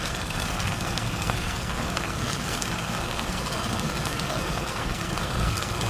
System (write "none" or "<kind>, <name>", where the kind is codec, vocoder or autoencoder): codec, SNAC